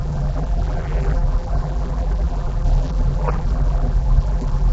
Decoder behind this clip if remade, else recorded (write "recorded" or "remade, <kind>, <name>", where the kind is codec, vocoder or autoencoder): remade, vocoder, BigVGAN v2